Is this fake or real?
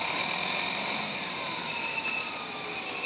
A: real